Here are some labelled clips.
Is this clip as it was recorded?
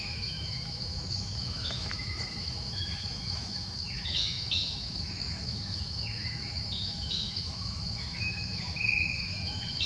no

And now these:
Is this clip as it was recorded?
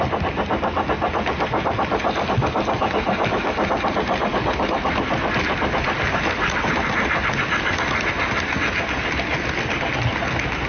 yes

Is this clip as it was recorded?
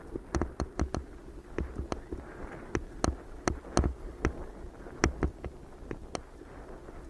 yes